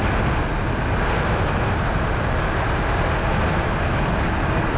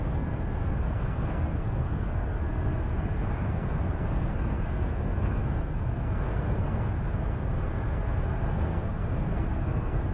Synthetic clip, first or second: second